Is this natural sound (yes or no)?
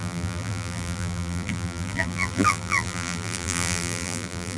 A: no